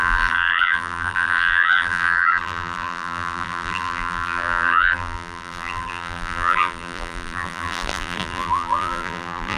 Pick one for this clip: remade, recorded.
remade